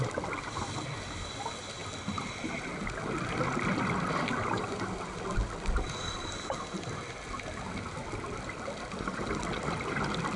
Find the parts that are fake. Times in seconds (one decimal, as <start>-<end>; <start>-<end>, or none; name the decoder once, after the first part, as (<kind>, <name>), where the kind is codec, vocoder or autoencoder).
none